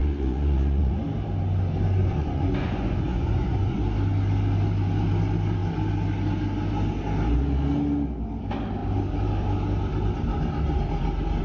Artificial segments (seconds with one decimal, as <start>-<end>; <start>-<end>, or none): 0.0-1.0; 2.0-3.8